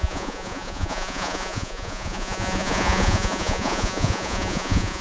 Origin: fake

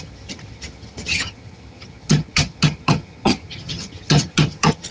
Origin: fake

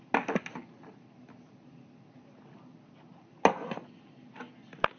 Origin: real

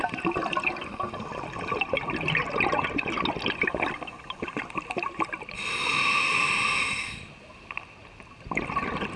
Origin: real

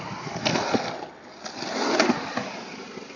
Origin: real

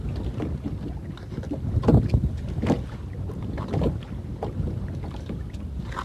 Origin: real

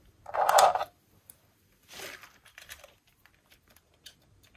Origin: real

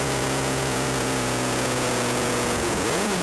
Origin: fake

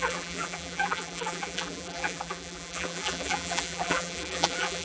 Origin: fake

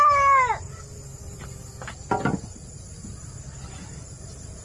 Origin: real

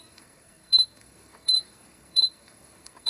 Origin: fake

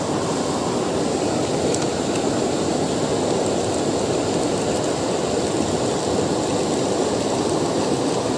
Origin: real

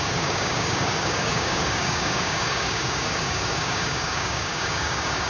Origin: fake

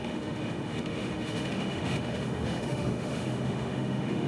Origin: fake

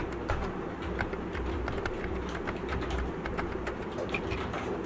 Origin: real